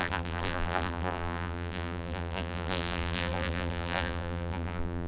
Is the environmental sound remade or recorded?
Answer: remade